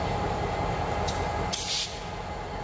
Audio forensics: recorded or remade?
recorded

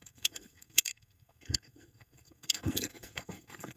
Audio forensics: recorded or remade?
remade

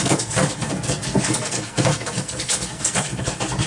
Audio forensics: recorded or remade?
remade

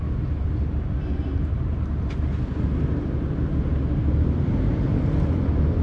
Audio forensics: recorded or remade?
recorded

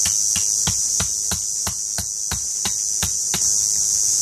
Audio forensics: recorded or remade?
recorded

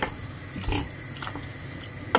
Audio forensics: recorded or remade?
recorded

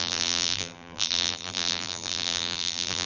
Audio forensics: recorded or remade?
remade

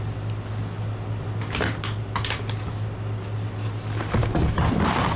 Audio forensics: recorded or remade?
recorded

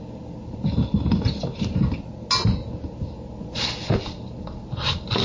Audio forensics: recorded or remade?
recorded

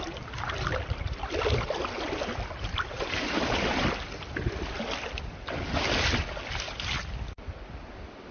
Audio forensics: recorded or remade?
recorded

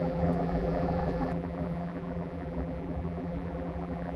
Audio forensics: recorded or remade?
remade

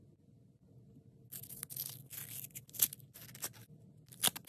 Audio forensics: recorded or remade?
recorded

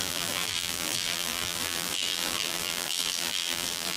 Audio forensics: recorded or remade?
remade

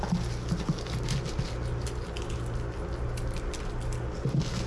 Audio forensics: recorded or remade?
recorded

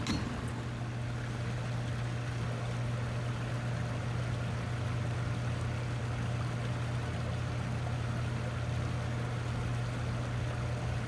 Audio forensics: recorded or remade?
recorded